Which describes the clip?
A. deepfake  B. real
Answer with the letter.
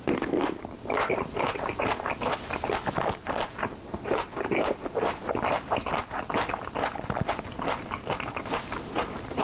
B